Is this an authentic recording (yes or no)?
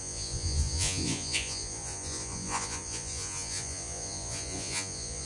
no